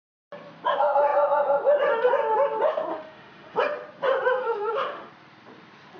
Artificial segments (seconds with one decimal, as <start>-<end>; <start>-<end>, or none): 2.9-3.6; 4.4-5.1